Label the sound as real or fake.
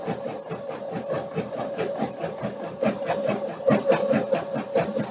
real